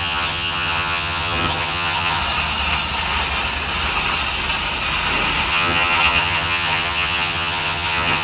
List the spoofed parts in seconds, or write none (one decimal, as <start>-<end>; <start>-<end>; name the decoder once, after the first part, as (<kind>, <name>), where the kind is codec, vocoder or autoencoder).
0.0-2.2 (vocoder, HiFi-GAN); 5.5-8.2